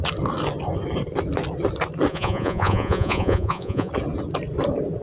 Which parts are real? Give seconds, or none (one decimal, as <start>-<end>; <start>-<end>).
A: 0.0-2.1; 3.9-5.0